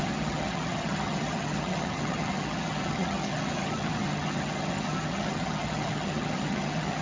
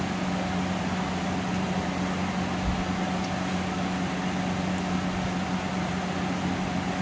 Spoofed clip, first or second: first